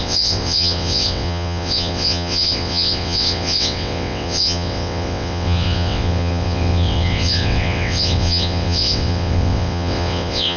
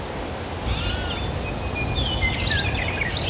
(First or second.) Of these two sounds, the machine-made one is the first